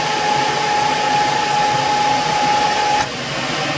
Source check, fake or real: real